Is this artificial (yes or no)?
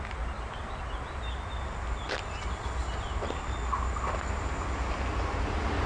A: no